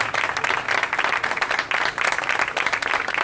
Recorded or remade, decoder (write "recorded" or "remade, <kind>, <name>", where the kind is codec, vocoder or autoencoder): recorded